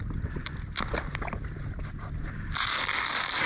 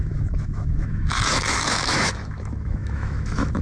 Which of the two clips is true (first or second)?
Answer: first